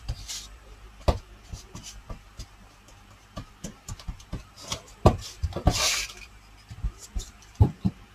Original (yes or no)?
no